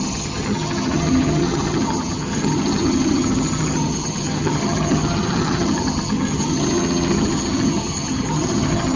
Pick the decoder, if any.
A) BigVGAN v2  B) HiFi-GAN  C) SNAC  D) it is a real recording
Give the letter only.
B